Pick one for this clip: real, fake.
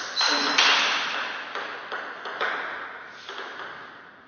real